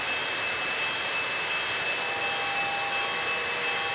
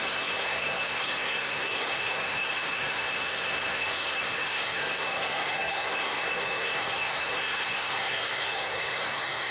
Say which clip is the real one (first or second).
first